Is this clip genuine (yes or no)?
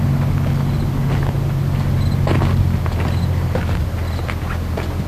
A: yes